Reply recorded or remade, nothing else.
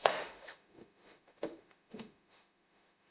remade